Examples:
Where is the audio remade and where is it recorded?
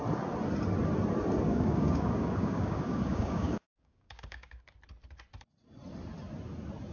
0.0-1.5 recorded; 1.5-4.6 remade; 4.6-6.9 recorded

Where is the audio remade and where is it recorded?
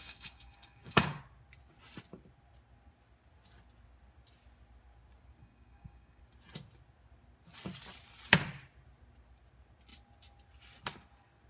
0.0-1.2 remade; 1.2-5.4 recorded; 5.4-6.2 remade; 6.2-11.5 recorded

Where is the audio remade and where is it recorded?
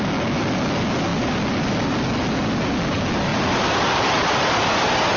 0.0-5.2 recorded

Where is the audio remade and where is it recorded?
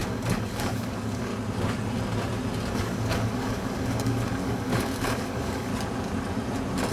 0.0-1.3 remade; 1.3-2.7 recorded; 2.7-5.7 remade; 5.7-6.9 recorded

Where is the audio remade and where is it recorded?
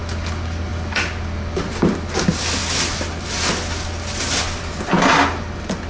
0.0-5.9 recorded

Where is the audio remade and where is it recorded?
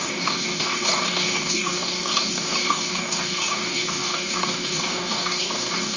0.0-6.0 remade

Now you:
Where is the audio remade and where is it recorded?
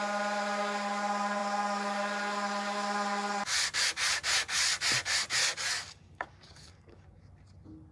0.0-5.4 recorded; 5.4-7.2 remade; 7.2-7.9 recorded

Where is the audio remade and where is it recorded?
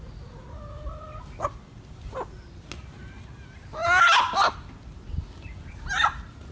0.0-6.5 recorded